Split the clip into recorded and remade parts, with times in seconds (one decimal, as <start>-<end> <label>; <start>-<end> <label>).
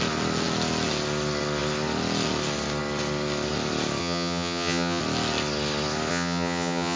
0.0-4.0 recorded; 4.0-5.0 remade; 5.0-6.1 recorded; 6.1-7.0 remade